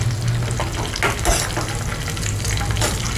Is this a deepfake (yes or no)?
no